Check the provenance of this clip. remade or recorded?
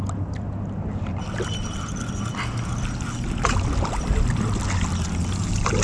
recorded